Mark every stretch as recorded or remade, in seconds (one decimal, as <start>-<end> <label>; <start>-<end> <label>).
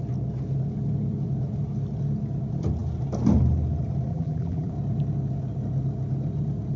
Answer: 0.0-4.1 recorded; 4.1-4.7 remade; 4.7-6.8 recorded